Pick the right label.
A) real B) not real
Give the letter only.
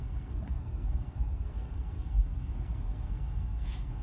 B